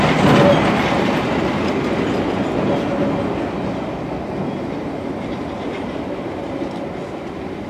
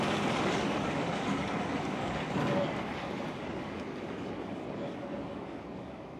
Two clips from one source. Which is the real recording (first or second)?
first